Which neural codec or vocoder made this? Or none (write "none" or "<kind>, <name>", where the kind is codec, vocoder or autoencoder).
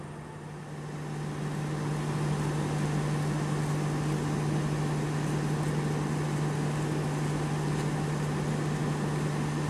none